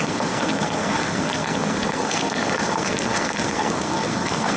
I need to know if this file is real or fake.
fake